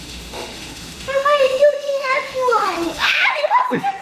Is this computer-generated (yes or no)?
yes